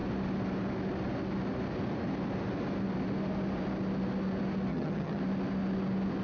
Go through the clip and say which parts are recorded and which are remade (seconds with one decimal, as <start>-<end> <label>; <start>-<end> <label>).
0.0-4.7 recorded; 4.7-5.2 remade; 5.2-6.2 recorded